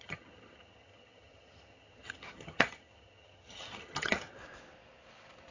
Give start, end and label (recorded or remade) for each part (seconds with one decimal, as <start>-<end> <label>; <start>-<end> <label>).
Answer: 0.0-4.4 remade; 4.4-5.5 recorded